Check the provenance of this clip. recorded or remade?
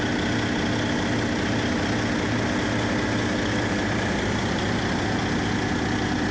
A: recorded